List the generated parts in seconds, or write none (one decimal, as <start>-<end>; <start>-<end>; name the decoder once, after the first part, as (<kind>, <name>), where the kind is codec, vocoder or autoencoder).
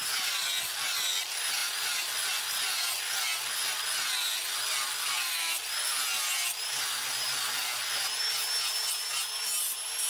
none